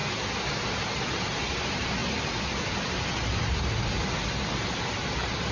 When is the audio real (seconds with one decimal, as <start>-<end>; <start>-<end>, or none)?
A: 0.0-5.5